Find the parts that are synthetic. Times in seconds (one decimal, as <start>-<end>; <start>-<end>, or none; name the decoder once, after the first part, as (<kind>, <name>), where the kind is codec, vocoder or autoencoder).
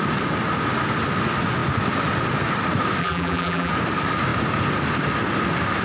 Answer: 3.0-3.7 (vocoder, BigVGAN v2)